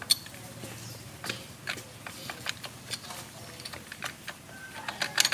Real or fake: real